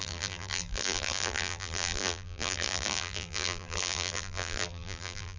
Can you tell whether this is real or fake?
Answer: fake